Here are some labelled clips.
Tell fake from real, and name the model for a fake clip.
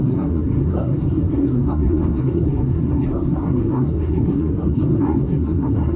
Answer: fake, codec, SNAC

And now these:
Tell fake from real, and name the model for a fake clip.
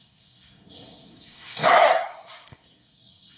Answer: fake, codec, SNAC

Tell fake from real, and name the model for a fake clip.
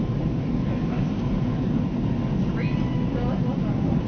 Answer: real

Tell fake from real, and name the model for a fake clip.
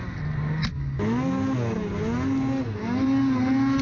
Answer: real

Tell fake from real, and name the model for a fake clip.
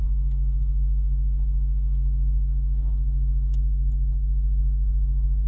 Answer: fake, codec, SNAC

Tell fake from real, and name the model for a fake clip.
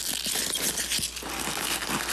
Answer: real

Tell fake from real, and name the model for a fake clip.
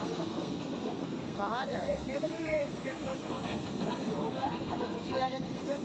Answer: fake, codec, SNAC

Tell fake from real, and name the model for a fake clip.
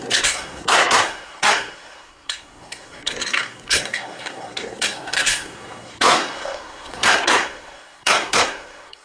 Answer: fake, codec, SNAC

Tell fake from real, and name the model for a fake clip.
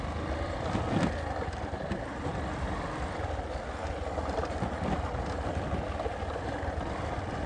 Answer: real